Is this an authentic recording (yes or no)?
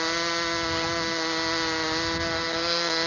yes